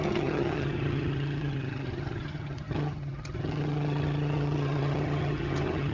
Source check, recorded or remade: remade